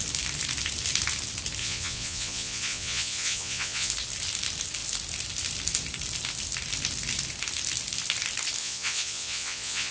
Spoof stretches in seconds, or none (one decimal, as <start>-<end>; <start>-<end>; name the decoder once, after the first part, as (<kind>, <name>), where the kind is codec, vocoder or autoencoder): 1.6-3.9 (vocoder, Vocos); 8.6-9.9